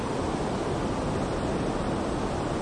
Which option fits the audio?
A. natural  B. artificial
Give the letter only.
A